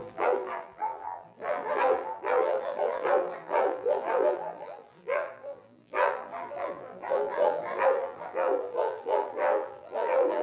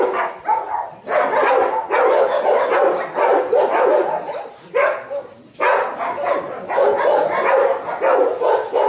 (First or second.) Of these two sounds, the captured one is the second